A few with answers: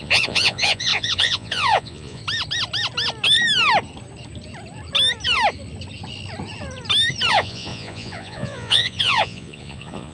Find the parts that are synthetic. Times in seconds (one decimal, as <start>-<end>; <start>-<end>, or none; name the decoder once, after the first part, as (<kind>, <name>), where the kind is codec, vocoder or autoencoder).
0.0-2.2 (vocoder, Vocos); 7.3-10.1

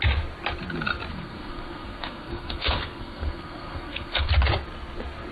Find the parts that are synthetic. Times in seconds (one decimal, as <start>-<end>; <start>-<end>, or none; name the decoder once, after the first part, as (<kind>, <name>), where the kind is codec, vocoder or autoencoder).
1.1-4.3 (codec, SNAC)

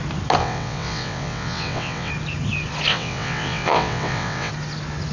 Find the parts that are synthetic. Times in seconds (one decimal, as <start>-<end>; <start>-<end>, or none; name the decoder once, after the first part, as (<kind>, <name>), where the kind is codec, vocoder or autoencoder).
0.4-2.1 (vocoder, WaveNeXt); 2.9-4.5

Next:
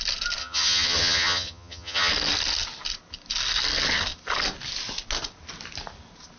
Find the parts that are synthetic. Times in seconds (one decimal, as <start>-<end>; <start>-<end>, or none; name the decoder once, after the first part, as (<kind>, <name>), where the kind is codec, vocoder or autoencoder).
0.4-2.1 (vocoder, HiFi-GAN)

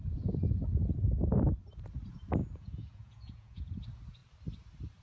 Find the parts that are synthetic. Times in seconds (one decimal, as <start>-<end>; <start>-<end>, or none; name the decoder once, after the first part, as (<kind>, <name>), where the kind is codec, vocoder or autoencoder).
2.4-3.8 (vocoder, Vocos)

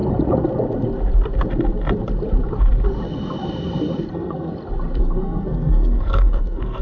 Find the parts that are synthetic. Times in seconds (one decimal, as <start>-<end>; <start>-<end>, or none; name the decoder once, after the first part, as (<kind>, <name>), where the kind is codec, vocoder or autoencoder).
4.1-4.5 (codec, SNAC); 5.0-6.8

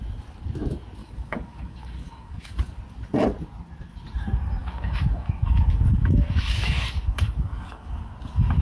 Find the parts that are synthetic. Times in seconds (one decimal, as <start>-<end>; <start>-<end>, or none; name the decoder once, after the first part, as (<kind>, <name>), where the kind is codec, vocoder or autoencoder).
1.0-2.8 (codec, DAC); 4.6-8.1

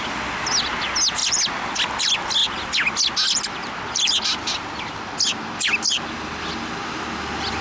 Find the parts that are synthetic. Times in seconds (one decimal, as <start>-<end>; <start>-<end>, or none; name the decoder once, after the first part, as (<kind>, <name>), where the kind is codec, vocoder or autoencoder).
none